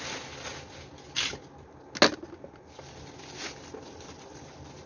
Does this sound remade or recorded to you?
recorded